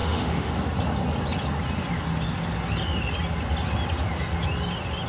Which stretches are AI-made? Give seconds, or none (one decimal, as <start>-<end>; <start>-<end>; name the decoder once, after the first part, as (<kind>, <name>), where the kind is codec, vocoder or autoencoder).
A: 0.0-0.5 (autoencoder, DAC-VAE)